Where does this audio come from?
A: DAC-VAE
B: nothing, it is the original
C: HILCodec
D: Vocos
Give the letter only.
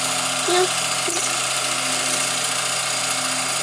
B